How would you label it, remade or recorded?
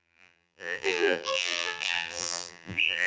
remade